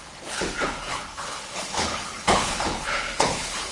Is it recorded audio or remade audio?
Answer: remade